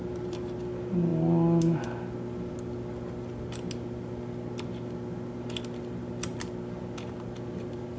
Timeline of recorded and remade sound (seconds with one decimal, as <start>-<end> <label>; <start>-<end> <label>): 0.0-8.0 recorded